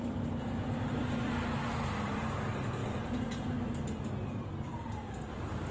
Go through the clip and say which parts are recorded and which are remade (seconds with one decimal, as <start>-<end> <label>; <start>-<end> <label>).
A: 0.0-5.7 recorded

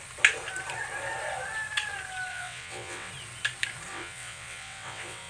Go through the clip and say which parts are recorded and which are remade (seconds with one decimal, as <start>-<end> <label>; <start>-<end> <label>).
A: 0.0-2.3 recorded; 2.3-3.1 remade; 3.1-3.9 recorded; 3.9-5.3 remade

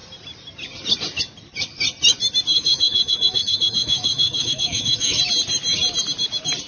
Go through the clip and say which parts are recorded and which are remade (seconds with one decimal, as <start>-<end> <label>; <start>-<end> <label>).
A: 0.0-2.5 recorded; 2.5-5.2 remade; 5.2-6.7 recorded

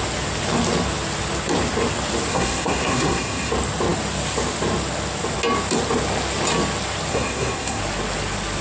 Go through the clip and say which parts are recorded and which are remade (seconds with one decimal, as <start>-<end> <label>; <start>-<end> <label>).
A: 0.0-2.3 recorded; 2.3-3.5 remade; 3.5-7.1 recorded; 7.1-7.8 remade; 7.8-8.6 recorded

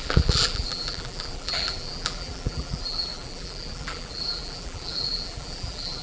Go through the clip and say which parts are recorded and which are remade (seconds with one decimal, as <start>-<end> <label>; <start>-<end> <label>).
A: 0.0-6.0 remade

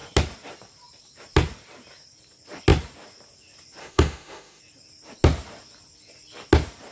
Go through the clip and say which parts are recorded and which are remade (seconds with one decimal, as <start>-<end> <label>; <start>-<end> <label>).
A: 0.0-3.8 recorded; 3.8-4.6 remade; 4.6-6.9 recorded

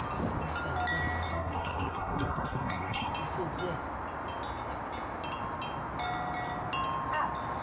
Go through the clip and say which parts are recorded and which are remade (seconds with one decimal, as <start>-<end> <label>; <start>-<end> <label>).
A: 0.0-1.3 recorded; 1.3-3.1 remade; 3.1-7.6 recorded

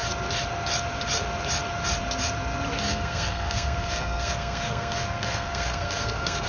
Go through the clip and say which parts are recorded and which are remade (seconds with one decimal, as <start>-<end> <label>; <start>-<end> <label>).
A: 0.0-2.9 recorded; 2.9-6.5 remade